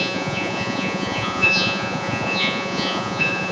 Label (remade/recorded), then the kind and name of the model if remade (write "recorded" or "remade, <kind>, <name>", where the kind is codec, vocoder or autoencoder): remade, vocoder, Vocos